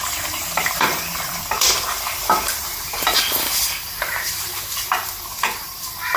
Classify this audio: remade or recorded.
remade